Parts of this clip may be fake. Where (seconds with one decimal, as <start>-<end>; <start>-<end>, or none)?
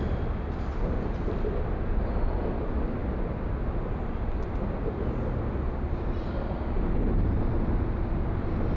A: none